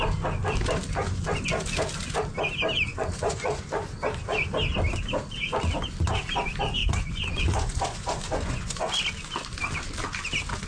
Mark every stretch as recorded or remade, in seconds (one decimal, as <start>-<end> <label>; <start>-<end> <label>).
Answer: 0.0-2.9 recorded; 2.9-4.0 remade; 4.0-6.8 recorded; 6.8-8.9 remade; 8.9-10.7 recorded